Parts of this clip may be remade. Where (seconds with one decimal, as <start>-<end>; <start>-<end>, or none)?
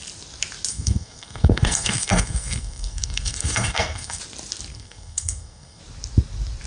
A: 0.7-4.2; 4.7-5.8